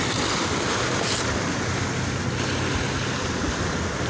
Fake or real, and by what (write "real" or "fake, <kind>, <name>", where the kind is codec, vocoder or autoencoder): real